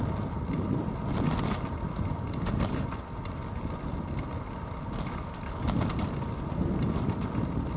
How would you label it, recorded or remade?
recorded